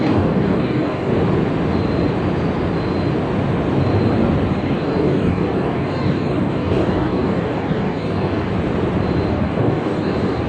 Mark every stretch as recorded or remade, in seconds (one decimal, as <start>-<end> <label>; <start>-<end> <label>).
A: 0.0-1.1 remade; 1.1-4.5 recorded; 4.5-8.5 remade; 8.5-9.3 recorded; 9.3-10.5 remade